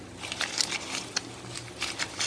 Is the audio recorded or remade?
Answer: recorded